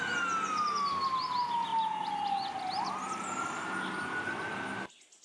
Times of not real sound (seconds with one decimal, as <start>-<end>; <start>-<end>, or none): none